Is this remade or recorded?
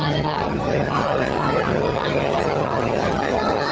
remade